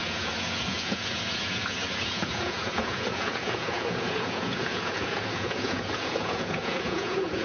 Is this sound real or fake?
fake